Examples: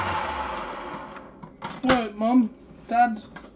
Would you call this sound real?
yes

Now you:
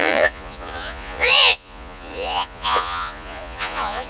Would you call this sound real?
no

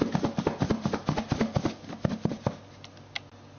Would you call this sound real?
yes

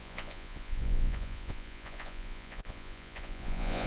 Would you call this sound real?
no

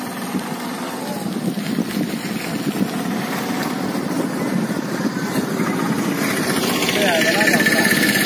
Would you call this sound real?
yes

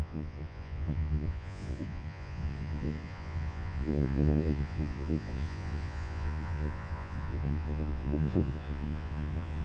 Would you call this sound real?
no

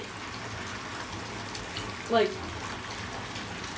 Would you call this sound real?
yes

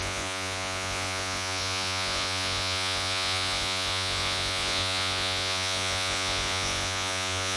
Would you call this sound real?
no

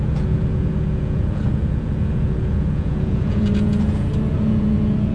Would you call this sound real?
no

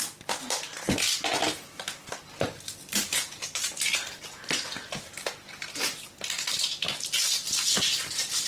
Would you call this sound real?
yes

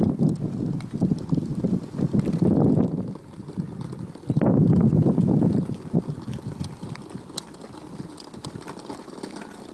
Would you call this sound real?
yes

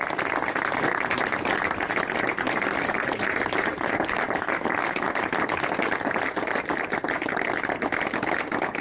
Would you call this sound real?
yes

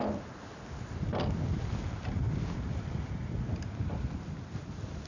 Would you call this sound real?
yes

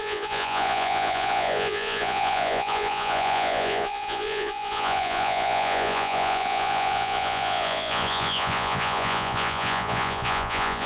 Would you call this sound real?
no